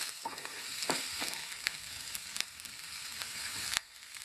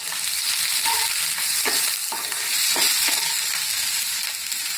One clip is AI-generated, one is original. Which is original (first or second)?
second